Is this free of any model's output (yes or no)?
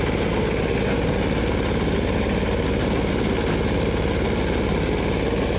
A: yes